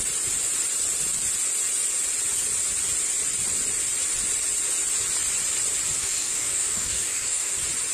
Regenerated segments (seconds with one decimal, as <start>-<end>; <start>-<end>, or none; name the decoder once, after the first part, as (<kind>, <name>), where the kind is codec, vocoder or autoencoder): 6.0-7.5 (codec, DAC)